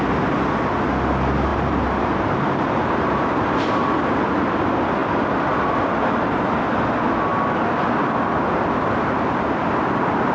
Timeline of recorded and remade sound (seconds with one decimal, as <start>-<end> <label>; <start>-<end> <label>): 0.0-1.5 recorded; 1.5-3.6 remade; 3.6-10.3 recorded